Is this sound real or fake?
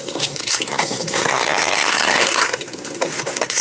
fake